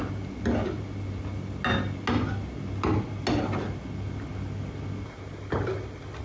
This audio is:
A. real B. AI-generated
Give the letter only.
A